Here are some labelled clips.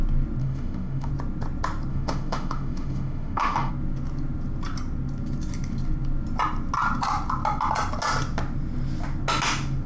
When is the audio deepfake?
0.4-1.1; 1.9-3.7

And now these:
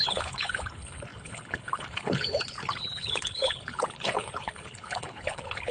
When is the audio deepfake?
0.0-5.7

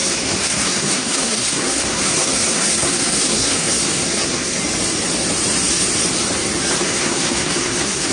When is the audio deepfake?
0.0-4.6; 6.8-8.1

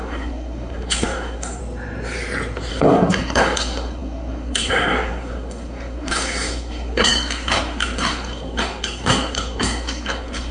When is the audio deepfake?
0.0-1.6; 2.7-10.5

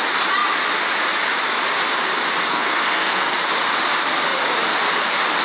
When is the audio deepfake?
2.5-3.2

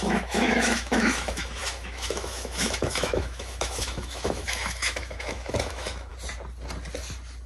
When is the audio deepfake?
0.0-6.1

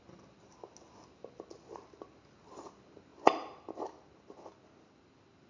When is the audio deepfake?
none

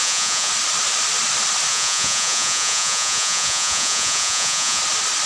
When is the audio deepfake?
0.0-0.5; 1.7-4.8